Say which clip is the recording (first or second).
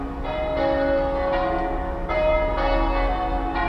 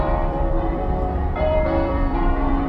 first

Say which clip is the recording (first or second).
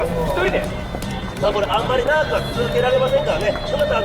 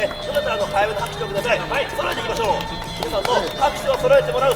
second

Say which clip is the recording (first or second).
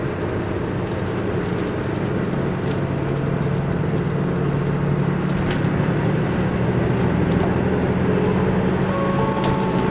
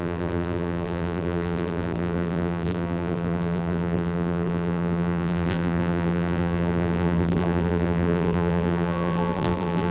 first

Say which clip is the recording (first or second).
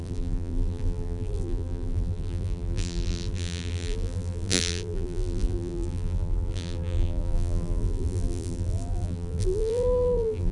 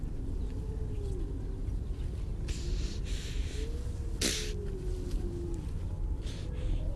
second